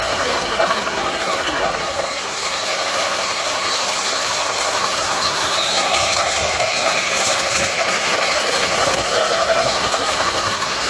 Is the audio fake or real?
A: fake